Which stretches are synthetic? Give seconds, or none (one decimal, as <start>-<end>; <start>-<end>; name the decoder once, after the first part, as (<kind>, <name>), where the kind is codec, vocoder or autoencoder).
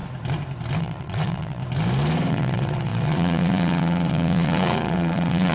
0.8-1.6 (vocoder, Vocos); 2.3-5.5